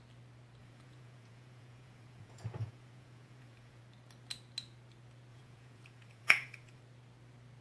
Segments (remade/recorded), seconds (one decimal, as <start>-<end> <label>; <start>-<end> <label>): 0.0-0.6 recorded; 0.6-3.8 remade; 3.8-5.3 recorded; 5.3-6.8 remade; 6.8-7.6 recorded